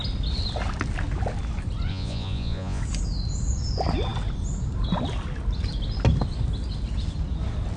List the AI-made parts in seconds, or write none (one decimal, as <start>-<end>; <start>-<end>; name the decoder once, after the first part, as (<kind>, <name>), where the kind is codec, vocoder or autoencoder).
1.9-2.8 (vocoder, Vocos)